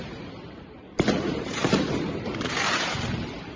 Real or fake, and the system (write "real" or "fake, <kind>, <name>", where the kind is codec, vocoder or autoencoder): fake, vocoder, BigVGAN v2